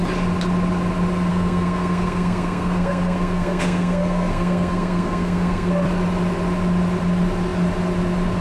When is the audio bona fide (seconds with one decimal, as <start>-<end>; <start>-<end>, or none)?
0.0-1.3; 5.7-8.4